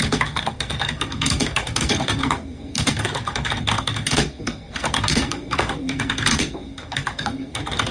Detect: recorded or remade remade